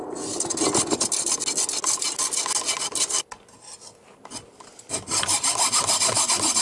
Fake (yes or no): no